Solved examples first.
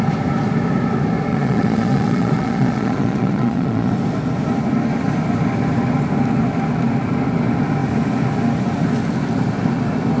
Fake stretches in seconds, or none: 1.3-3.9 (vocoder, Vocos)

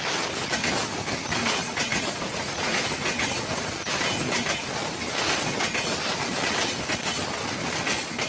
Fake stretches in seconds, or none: 1.9-3.7 (vocoder, Vocos)